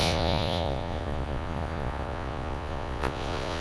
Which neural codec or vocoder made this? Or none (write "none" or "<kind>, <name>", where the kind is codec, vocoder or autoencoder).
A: vocoder, Vocos